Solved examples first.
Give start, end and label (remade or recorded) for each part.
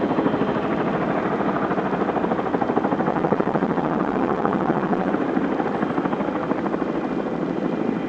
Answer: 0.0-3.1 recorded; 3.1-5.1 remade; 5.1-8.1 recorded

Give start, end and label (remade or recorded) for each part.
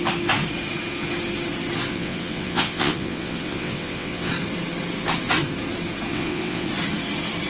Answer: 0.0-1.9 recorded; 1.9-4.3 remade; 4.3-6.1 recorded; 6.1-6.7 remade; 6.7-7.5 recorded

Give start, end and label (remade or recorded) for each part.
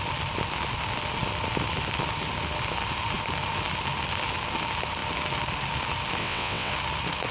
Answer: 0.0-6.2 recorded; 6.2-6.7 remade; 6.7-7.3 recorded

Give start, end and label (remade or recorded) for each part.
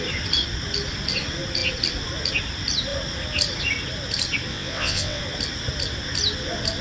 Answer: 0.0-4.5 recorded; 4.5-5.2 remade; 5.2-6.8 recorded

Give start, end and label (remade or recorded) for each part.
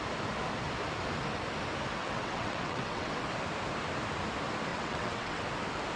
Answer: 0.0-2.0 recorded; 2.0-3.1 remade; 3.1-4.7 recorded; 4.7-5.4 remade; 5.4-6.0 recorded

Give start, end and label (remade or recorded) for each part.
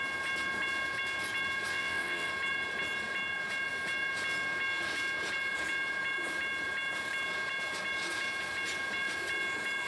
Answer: 0.0-1.7 recorded; 1.7-2.3 remade; 2.3-9.9 recorded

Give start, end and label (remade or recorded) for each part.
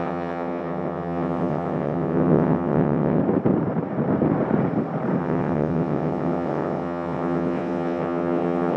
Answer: 0.0-3.2 remade; 3.2-5.2 recorded; 5.2-8.8 remade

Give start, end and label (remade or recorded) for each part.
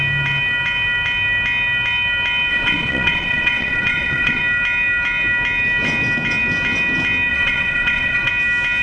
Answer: 0.0-2.5 recorded; 2.5-4.4 remade; 4.4-7.3 recorded; 7.3-8.3 remade; 8.3-8.8 recorded